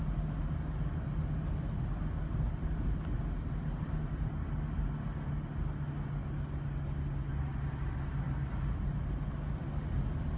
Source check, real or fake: real